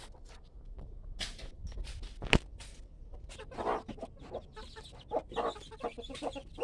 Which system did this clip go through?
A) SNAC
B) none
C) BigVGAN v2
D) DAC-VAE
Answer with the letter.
B